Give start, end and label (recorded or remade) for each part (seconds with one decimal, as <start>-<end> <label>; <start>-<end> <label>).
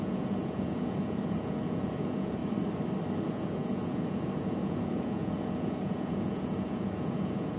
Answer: 0.0-2.4 remade; 2.4-3.2 recorded; 3.2-7.6 remade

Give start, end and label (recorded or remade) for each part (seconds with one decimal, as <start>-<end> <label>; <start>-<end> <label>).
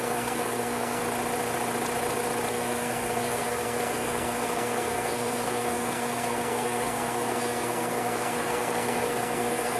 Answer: 0.0-1.0 remade; 1.0-2.5 recorded; 2.5-9.8 remade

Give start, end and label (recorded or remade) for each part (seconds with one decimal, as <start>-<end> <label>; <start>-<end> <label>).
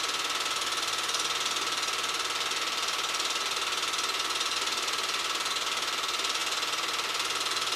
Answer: 0.0-7.8 recorded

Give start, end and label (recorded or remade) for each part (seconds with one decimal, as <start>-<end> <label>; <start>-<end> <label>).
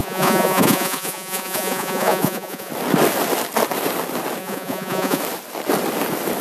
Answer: 0.0-2.7 remade; 2.7-4.4 recorded; 4.4-5.2 remade; 5.2-6.4 recorded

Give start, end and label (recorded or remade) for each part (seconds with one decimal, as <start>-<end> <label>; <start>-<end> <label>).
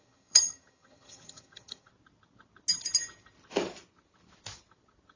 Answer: 0.0-1.9 remade; 1.9-5.2 recorded